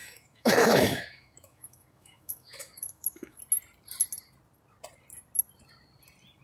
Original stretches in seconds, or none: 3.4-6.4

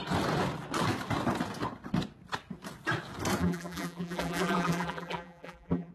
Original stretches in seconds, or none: 0.0-3.4

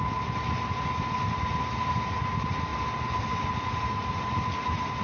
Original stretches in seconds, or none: 0.0-5.0

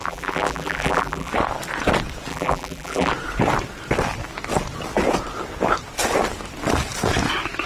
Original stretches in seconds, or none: 1.3-2.3; 3.1-7.7